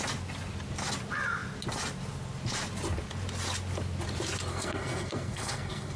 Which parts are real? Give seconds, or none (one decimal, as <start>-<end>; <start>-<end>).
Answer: 0.0-4.5